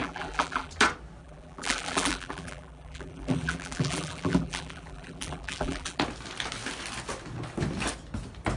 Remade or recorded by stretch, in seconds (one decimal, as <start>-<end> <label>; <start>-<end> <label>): 0.0-0.7 remade; 0.7-1.2 recorded; 1.2-6.0 remade; 6.0-8.6 recorded